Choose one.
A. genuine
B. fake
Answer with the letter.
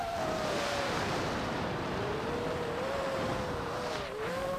B